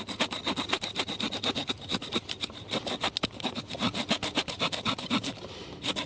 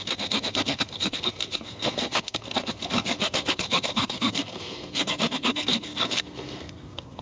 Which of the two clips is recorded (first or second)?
first